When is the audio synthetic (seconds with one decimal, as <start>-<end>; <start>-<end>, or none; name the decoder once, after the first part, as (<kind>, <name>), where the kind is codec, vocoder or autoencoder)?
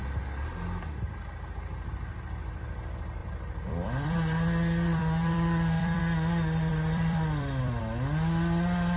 3.2-6.0 (vocoder, BigVGAN v2); 6.7-7.8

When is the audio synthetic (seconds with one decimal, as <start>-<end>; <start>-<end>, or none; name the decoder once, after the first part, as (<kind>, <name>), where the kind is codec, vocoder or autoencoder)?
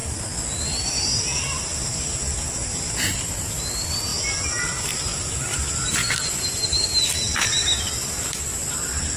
3.6-4.1 (vocoder, BigVGAN v2); 5.8-6.9; 8.1-9.2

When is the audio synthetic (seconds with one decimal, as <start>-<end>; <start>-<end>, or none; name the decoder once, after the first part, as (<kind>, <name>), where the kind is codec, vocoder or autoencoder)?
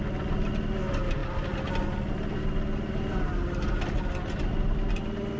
none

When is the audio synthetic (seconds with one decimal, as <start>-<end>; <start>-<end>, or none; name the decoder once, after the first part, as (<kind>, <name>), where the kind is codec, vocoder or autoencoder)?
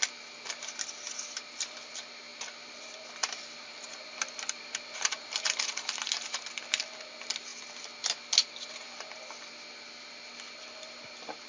3.2-5.5 (vocoder, BigVGAN v2)